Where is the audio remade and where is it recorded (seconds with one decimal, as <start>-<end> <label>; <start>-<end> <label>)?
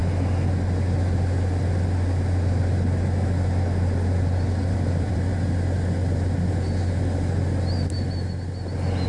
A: 0.0-4.7 recorded; 4.7-5.3 remade; 5.3-9.1 recorded